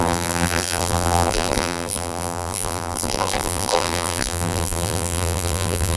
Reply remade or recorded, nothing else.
remade